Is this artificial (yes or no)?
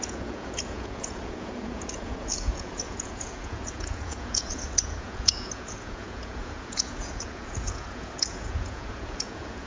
yes